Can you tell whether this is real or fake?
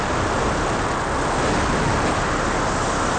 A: real